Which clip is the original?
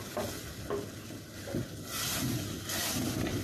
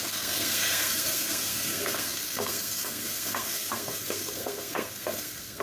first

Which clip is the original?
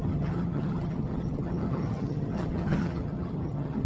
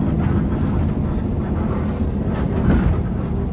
second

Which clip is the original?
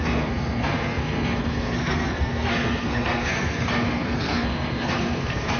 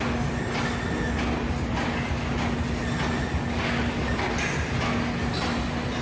second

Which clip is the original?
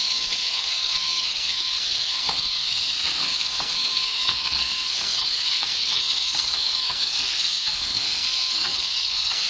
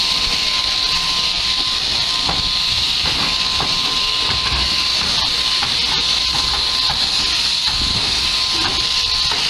second